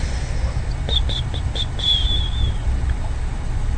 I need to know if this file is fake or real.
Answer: real